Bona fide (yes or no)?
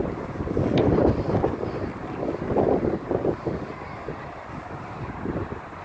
yes